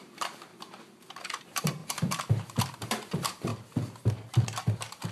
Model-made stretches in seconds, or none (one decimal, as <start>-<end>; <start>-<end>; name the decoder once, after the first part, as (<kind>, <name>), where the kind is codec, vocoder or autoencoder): 0.0-0.5 (vocoder, BigVGAN v2); 1.4-1.8; 2.6-3.5